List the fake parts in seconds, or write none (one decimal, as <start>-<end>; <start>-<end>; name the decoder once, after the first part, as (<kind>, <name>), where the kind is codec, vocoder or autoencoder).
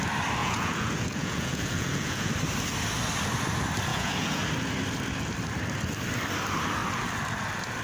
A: 0.4-2.3 (vocoder, Vocos); 3.9-4.5